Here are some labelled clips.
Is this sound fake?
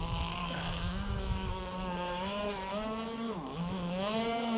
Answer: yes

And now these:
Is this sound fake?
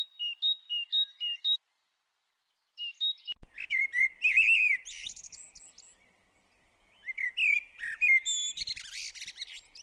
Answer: no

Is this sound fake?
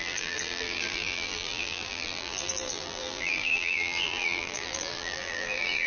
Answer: yes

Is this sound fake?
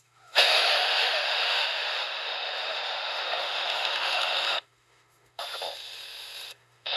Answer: yes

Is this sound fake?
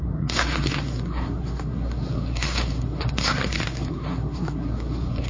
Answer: yes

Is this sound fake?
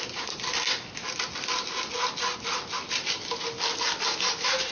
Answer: no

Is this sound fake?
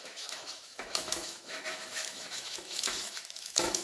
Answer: yes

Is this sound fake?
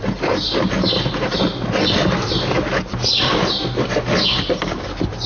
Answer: no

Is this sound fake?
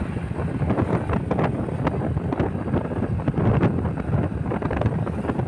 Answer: no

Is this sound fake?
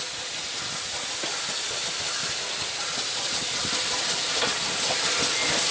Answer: no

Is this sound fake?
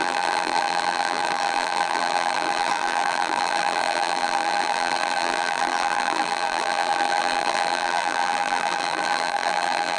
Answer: yes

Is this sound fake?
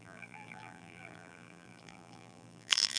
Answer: yes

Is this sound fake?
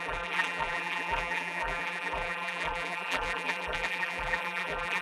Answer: yes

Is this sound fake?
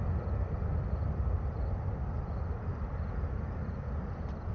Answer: no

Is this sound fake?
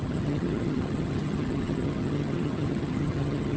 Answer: yes